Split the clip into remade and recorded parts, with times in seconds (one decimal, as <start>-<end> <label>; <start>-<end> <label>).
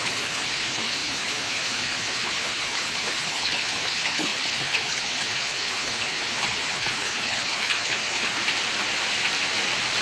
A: 0.0-8.4 remade; 8.4-10.0 recorded